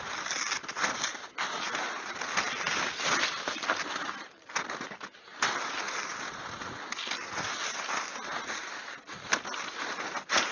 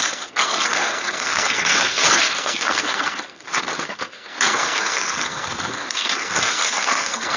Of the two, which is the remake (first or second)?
second